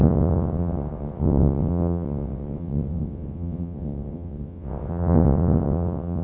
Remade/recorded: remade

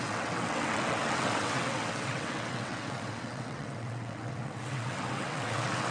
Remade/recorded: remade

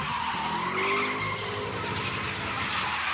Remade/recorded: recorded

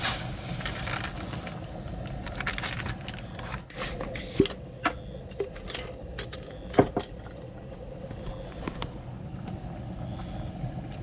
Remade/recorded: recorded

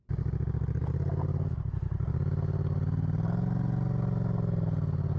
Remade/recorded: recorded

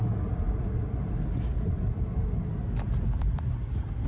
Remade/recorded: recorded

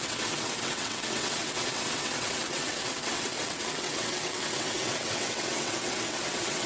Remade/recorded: remade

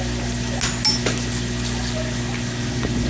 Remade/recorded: recorded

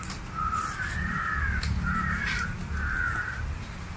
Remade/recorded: recorded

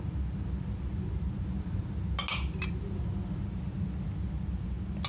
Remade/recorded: recorded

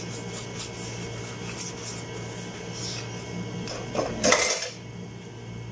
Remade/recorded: recorded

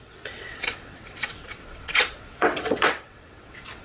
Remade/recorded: remade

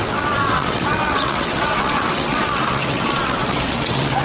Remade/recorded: remade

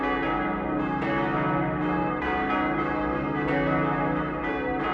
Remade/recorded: recorded